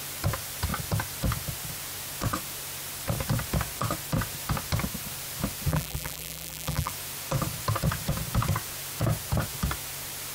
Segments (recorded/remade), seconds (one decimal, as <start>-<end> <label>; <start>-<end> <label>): 0.0-5.7 recorded; 5.7-6.9 remade; 6.9-10.3 recorded